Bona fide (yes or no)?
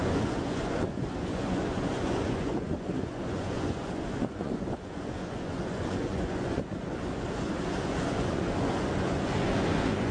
no